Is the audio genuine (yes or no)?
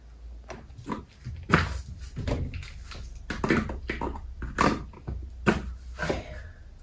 yes